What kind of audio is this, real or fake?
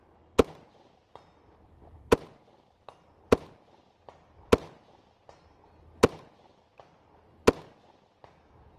real